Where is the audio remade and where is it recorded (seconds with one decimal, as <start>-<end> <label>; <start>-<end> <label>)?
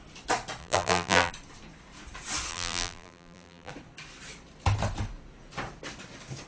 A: 0.0-0.6 recorded; 0.6-1.3 remade; 1.3-2.5 recorded; 2.5-3.7 remade; 3.7-6.5 recorded